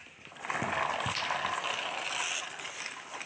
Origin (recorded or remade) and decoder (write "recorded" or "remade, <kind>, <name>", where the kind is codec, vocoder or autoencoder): recorded